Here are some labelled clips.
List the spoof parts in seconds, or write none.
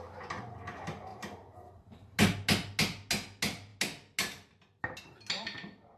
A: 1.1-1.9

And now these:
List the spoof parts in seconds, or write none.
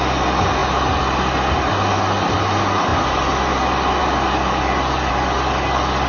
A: none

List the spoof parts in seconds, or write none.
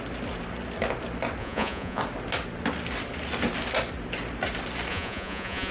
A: 1.4-2.0; 4.9-5.7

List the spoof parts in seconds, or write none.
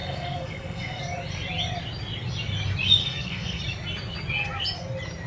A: 0.0-1.0; 3.0-3.6